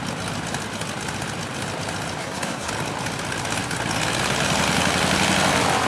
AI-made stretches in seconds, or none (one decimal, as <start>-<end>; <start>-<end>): 2.2-2.7